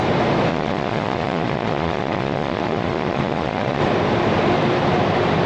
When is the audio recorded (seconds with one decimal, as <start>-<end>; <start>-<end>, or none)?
0.0-0.5; 3.8-5.5